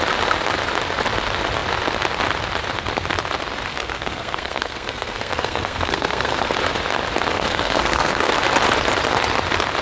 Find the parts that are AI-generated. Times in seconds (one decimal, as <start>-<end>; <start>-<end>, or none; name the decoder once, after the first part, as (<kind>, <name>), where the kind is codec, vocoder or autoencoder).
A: 3.7-6.5 (codec, SNAC); 7.3-8.3